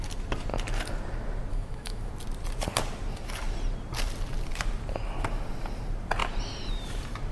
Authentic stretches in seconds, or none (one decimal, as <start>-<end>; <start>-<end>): 0.0-1.5; 2.1-7.3